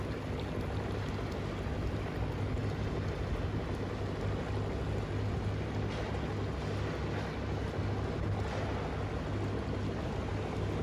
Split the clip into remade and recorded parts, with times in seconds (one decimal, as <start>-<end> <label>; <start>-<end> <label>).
0.0-10.8 recorded